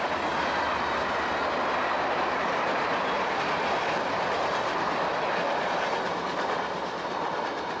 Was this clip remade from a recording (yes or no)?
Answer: no